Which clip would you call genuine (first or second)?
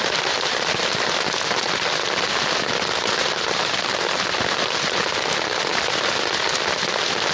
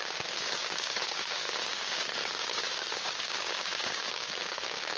first